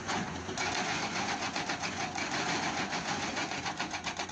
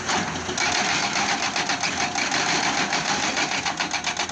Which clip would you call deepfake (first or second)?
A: first